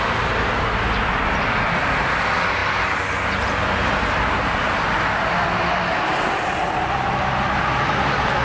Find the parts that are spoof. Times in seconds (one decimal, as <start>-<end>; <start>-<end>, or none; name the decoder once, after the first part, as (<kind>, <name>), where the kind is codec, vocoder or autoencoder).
none